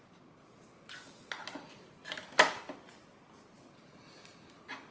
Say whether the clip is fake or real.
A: real